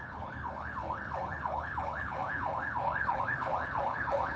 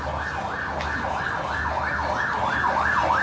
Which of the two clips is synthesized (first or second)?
first